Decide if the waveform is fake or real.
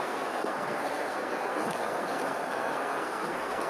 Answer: fake